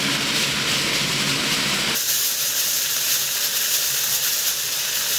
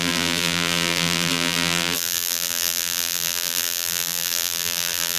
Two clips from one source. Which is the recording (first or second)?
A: first